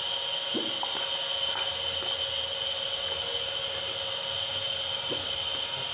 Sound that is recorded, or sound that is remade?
recorded